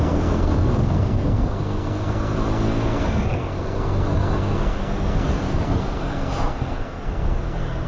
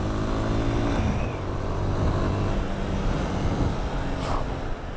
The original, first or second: second